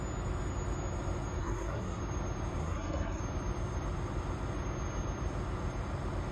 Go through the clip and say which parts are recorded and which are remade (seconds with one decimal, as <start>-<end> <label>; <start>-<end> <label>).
0.0-1.4 recorded; 1.4-2.0 remade; 2.0-2.6 recorded; 2.6-3.2 remade; 3.2-6.3 recorded